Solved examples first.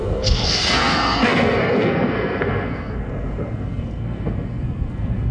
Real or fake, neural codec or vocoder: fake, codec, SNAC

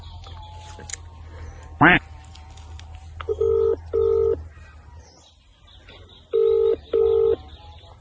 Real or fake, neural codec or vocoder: real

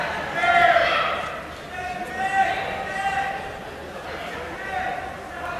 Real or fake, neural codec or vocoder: real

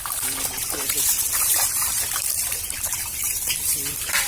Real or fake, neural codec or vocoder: fake, vocoder, BigVGAN v2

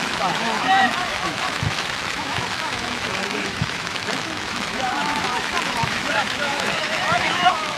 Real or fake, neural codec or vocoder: fake, autoencoder, DAC-VAE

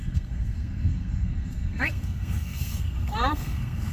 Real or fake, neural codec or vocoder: fake, codec, SNAC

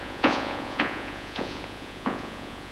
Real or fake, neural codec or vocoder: fake, vocoder, Vocos